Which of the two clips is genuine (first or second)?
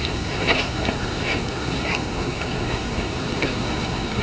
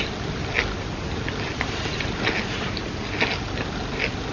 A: second